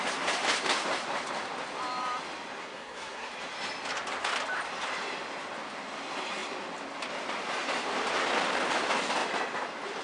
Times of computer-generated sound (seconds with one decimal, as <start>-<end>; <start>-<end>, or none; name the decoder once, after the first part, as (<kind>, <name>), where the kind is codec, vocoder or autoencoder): 2.6-3.3 (codec, SNAC)